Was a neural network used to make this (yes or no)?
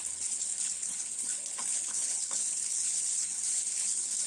yes